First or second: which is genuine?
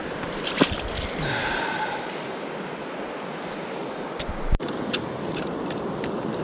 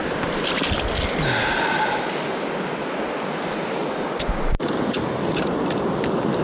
second